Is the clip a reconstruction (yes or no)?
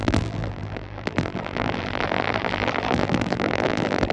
yes